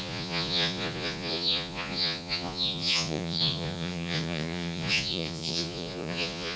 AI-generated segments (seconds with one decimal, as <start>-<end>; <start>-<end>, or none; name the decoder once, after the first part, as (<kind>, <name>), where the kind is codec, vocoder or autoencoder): 0.0-6.6 (vocoder, Vocos)